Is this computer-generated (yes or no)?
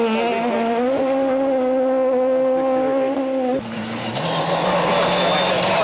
no